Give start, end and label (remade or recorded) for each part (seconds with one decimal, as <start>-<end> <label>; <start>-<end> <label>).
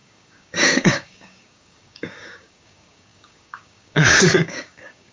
0.0-5.1 remade